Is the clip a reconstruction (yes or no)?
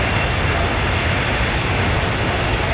no